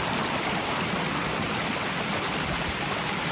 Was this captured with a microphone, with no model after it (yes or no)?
no